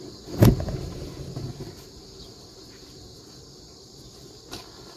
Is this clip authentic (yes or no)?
yes